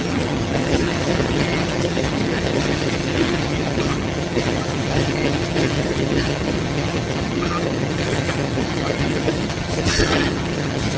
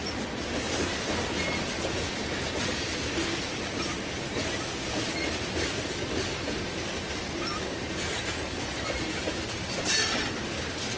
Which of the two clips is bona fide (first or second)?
second